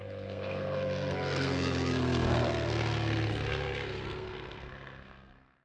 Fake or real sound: fake